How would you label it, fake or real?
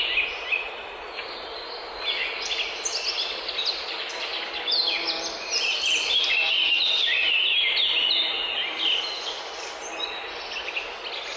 real